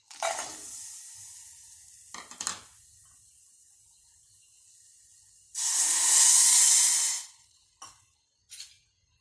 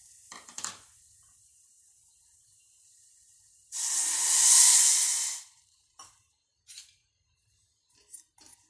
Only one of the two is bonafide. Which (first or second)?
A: first